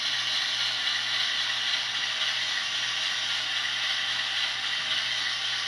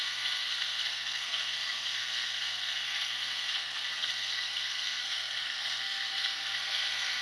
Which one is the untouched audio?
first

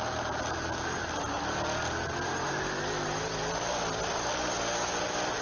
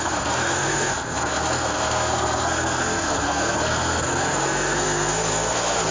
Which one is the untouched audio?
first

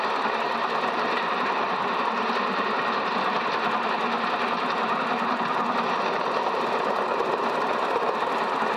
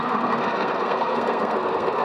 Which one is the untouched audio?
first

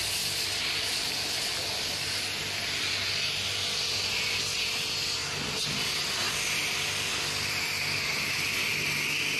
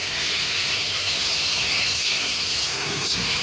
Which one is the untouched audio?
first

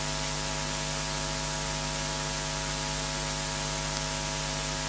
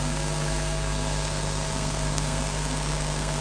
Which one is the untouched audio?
first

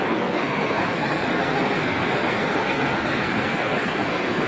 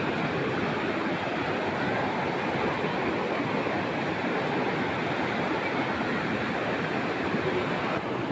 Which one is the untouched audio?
second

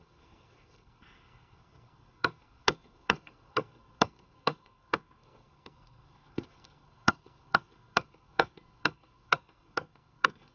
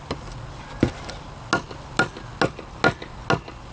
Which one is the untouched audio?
second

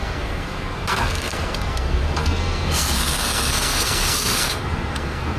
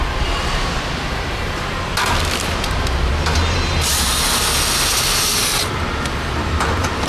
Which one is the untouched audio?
second